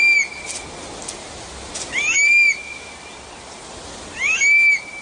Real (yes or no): yes